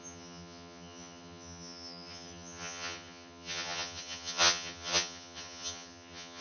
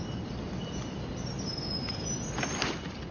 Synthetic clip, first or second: first